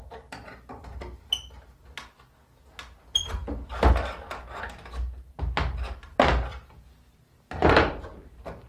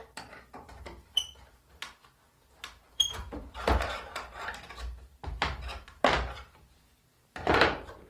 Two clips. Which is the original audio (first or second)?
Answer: first